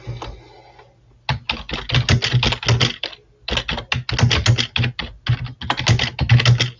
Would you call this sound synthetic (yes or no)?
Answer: no